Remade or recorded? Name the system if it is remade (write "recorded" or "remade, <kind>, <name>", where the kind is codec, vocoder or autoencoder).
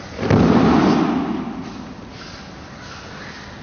recorded